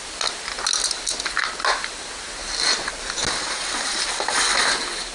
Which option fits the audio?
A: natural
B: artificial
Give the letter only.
A